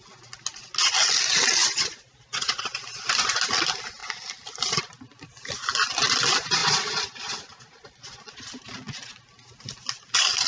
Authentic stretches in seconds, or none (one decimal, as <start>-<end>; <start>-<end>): 0.0-1.6; 2.8-6.6; 8.4-10.5

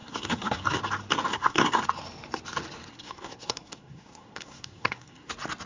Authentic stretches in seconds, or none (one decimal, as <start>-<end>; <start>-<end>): 0.8-1.3; 1.8-2.9; 5.3-5.7

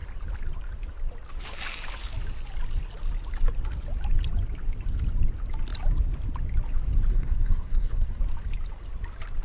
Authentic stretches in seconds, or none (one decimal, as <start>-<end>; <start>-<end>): 0.0-7.1; 8.2-9.4

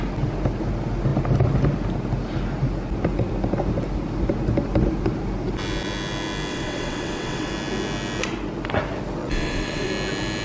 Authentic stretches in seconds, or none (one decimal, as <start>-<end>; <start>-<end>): 0.0-6.5; 7.5-9.2; 9.9-10.4

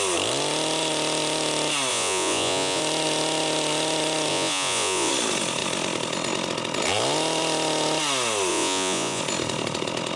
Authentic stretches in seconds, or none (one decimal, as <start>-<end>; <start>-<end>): 0.0-1.9; 2.8-4.3; 5.1-8.5; 9.2-10.2

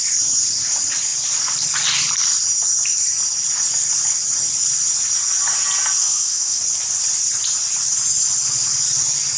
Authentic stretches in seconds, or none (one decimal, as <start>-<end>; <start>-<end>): 0.0-6.0; 6.6-9.4

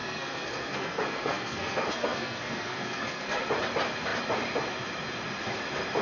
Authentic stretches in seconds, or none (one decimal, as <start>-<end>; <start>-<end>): 3.4-6.0

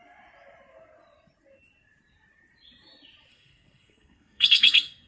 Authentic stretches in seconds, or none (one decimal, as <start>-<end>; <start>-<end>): 0.0-3.3